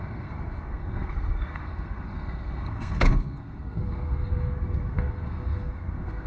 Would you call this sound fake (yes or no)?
yes